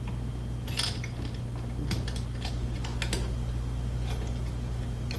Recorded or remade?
recorded